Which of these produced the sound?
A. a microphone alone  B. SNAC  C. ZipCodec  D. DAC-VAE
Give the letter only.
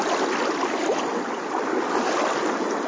A